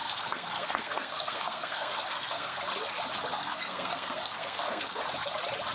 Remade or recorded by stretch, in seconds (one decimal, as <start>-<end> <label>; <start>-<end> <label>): 0.0-2.6 remade; 2.6-3.3 recorded; 3.3-5.0 remade; 5.0-5.7 recorded